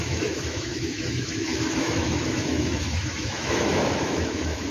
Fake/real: fake